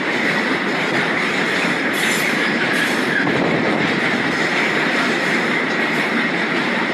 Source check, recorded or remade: remade